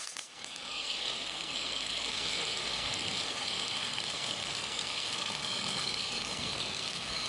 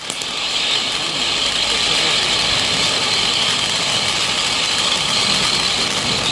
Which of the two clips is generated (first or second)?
first